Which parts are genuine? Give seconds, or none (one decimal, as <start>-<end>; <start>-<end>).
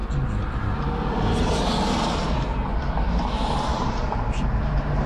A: 0.0-3.7